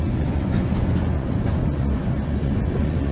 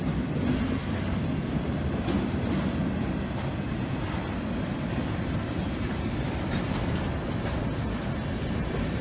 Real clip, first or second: second